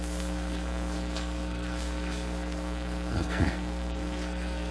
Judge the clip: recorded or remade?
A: remade